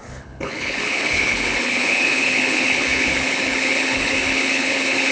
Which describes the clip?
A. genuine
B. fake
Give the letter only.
B